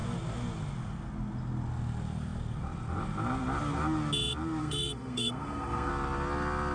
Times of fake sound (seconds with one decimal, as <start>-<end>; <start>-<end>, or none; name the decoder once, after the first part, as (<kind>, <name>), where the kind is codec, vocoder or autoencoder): 4.6-5.9 (codec, SNAC)